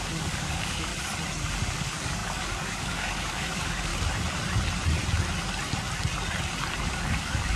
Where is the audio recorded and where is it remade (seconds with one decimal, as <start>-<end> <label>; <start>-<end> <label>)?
0.0-0.9 remade; 0.9-1.7 recorded; 1.7-3.9 remade; 3.9-6.8 recorded; 6.8-7.6 remade